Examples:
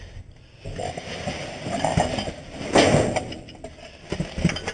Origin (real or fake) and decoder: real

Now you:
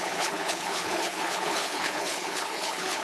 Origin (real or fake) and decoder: fake, codec, HILCodec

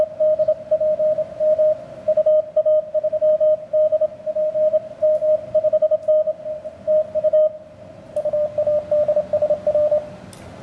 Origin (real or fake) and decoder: real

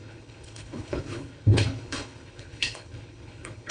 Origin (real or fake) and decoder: fake, codec, HILCodec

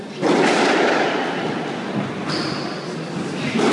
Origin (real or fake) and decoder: real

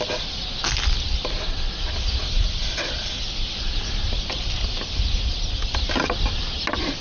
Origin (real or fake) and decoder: real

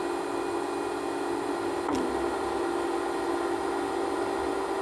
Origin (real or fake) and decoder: real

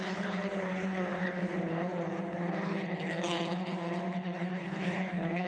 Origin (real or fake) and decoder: fake, codec, HILCodec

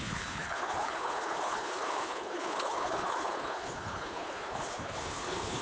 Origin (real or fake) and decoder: fake, codec, HILCodec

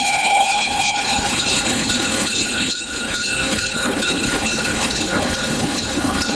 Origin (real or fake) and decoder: fake, codec, HILCodec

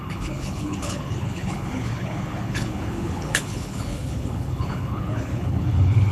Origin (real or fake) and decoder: fake, codec, HILCodec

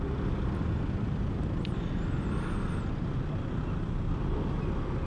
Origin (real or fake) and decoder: real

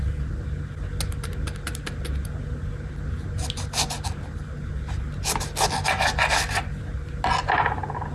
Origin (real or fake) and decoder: real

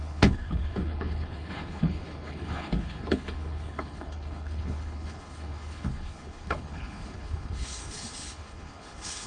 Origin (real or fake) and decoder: fake, codec, HILCodec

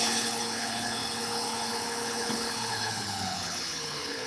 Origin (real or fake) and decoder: fake, codec, HILCodec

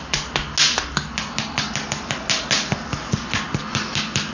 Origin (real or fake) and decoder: real